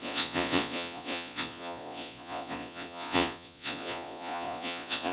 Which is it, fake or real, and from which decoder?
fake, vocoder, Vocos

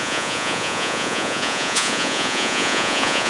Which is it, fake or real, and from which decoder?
fake, vocoder, Vocos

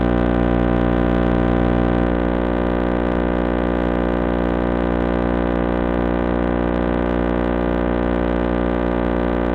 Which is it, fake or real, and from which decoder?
real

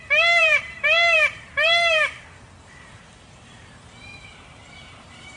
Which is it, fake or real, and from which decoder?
fake, vocoder, BigVGAN v2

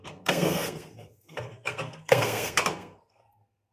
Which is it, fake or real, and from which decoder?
fake, codec, SNAC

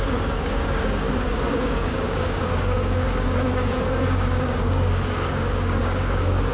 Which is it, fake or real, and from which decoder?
fake, codec, DAC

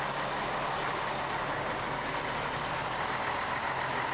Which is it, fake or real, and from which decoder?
real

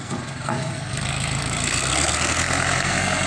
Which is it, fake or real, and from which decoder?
fake, codec, SNAC